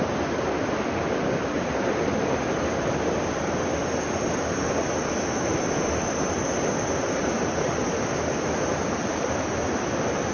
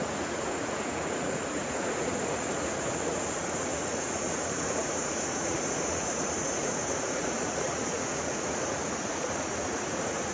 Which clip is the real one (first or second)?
first